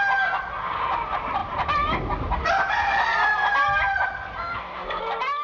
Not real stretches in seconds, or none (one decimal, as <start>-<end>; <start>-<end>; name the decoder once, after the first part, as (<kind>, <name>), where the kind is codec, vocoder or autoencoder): 4.4-5.0 (codec, SNAC)